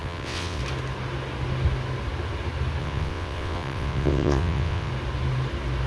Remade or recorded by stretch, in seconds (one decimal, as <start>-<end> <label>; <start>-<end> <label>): 0.0-0.6 remade; 0.6-2.8 recorded; 2.8-4.9 remade; 4.9-5.9 recorded